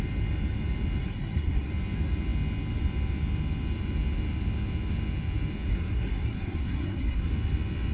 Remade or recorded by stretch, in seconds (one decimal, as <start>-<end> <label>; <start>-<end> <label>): 0.0-1.0 recorded; 1.0-1.7 remade; 1.7-5.7 recorded; 5.7-7.3 remade; 7.3-7.9 recorded

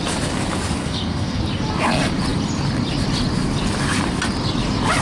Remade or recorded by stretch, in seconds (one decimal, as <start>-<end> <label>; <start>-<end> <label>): 0.0-0.8 recorded; 0.8-1.4 remade; 1.4-5.0 recorded

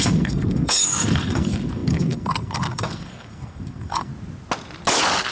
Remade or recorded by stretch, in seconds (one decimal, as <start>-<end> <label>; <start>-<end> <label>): 0.0-4.1 remade; 4.1-5.3 recorded

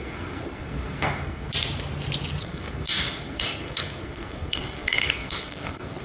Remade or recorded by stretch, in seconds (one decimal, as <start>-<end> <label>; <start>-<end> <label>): 0.0-1.5 remade; 1.5-2.4 recorded; 2.4-6.0 remade

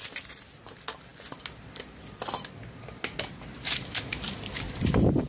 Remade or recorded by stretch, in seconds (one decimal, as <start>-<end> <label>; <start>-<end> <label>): 0.0-5.3 recorded

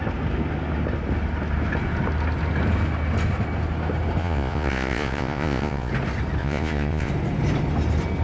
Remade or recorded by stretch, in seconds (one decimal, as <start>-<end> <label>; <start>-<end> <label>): 0.0-4.2 recorded; 4.2-5.9 remade; 5.9-6.4 recorded; 6.4-7.1 remade; 7.1-8.2 recorded

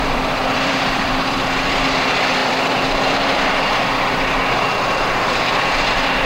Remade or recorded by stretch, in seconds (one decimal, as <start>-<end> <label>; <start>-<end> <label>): 0.0-6.3 remade